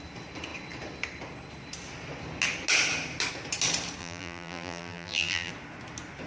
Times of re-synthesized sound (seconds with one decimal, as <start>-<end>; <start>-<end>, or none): 4.0-5.5